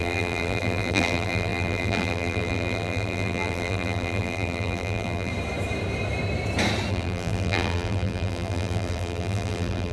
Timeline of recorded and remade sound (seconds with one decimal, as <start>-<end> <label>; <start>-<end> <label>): 0.0-5.3 remade; 5.3-6.9 recorded; 6.9-9.9 remade